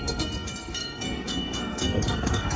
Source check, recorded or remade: remade